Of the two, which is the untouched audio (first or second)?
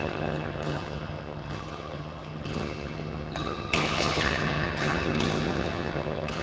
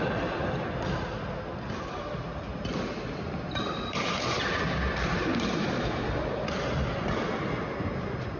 second